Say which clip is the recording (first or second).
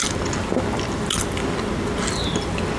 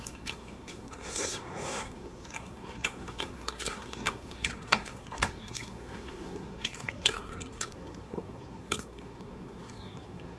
first